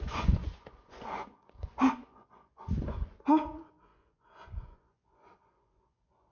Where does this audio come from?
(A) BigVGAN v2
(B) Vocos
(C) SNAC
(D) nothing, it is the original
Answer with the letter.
B